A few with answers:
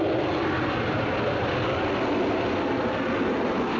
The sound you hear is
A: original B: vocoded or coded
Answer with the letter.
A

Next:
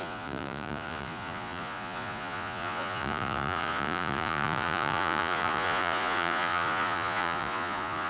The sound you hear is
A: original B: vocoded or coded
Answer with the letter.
B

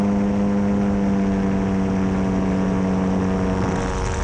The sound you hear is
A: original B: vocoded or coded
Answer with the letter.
A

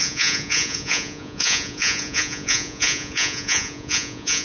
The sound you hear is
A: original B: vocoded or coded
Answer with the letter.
B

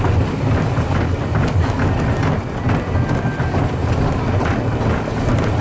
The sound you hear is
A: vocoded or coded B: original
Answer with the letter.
B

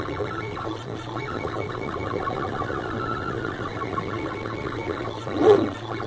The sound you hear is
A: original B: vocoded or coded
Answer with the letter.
B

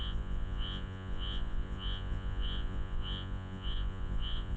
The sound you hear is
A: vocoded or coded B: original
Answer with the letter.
A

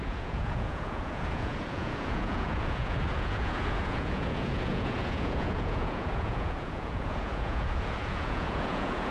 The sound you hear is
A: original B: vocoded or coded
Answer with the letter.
B